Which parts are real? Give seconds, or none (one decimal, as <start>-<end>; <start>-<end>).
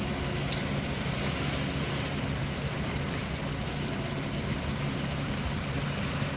0.0-6.4